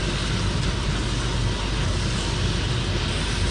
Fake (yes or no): no